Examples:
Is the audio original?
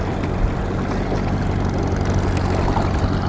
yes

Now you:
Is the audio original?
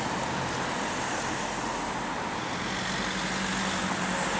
yes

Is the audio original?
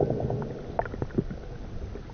yes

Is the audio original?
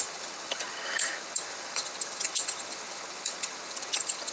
no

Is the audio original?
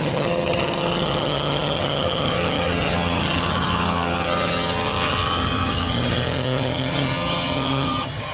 no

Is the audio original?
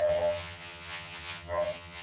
no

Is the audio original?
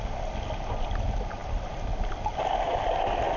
yes